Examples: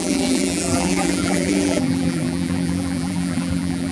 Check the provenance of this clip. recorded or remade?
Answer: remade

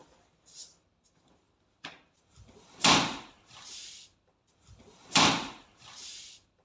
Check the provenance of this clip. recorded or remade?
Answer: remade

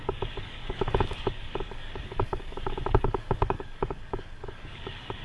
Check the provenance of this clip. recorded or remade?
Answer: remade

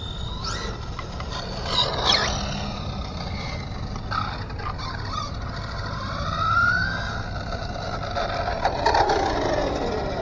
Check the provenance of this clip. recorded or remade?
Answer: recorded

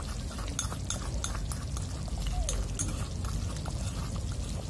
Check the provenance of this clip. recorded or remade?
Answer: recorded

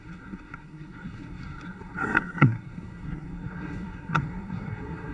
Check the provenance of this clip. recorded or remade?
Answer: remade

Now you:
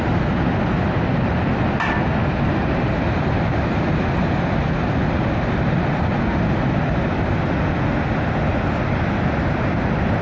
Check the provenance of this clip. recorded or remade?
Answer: recorded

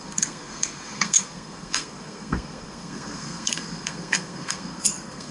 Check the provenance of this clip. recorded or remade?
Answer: remade